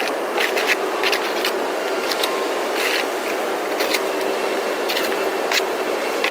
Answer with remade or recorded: recorded